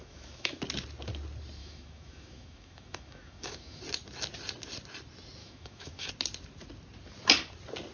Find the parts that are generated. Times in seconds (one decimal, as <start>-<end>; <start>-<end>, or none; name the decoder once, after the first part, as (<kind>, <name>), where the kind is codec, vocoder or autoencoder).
0.0-0.6 (autoencoder, DAC-VAE); 1.6-3.8; 5.4-6.1